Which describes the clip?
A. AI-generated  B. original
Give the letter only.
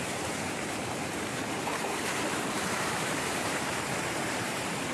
A